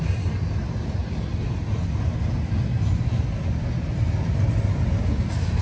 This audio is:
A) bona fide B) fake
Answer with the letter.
A